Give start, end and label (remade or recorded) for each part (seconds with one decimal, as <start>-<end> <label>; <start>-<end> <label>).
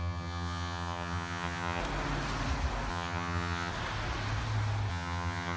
0.0-1.8 remade; 1.8-2.9 recorded; 2.9-3.7 remade; 3.7-4.9 recorded; 4.9-5.6 remade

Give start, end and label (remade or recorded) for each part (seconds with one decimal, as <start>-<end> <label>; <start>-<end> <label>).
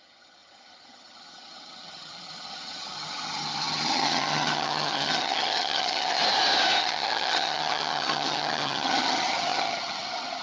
0.0-6.2 remade; 6.2-6.8 recorded; 6.8-10.4 remade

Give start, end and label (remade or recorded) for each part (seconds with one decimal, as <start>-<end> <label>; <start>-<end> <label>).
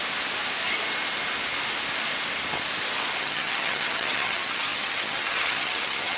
0.0-3.2 recorded; 3.2-6.2 remade